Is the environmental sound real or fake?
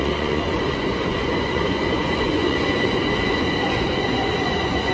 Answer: fake